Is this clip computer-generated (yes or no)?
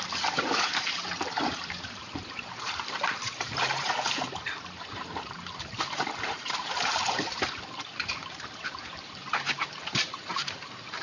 yes